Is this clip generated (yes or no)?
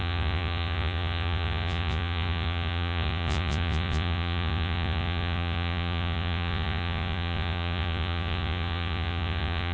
yes